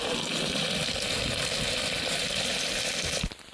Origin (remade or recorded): recorded